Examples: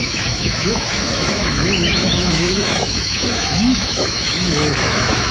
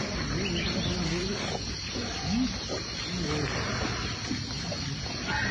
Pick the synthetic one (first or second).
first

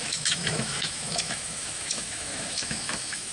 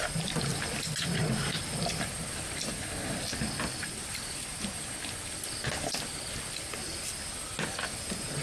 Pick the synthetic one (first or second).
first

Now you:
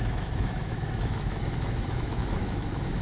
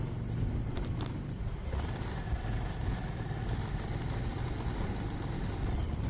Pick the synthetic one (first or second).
first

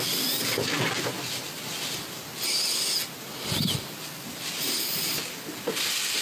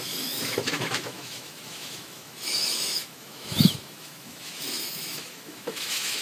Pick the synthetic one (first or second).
second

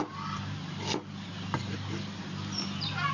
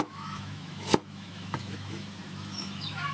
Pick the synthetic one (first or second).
second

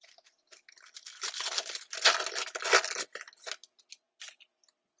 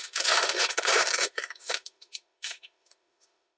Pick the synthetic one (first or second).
second